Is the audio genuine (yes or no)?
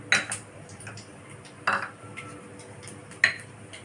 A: yes